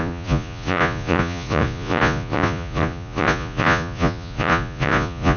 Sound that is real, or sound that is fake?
fake